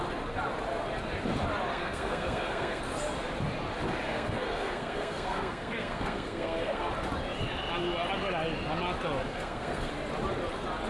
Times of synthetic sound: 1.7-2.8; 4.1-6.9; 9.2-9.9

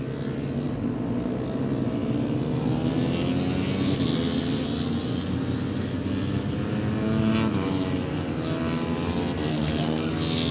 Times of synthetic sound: 9.5-10.1

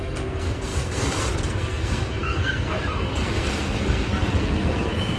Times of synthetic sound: 0.0-5.2

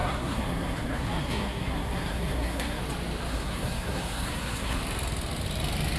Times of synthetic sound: 0.0-2.8; 3.3-4.8

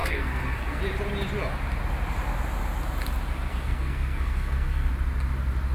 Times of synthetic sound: 0.0-0.8; 3.5-4.9

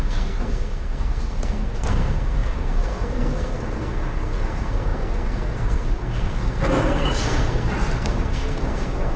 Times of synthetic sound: 0.0-9.2